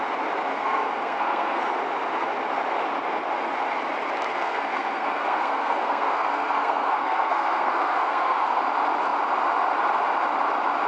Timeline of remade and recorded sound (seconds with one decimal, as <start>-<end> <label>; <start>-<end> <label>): 0.0-0.5 recorded; 0.5-1.6 remade; 1.6-4.3 recorded; 4.3-8.6 remade; 8.6-10.9 recorded